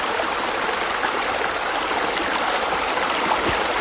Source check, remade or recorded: recorded